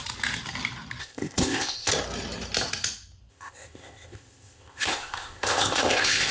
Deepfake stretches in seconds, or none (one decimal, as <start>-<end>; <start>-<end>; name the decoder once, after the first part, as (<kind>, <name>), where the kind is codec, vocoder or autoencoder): 1.0-1.9 (codec, ZipCodec); 3.3-6.3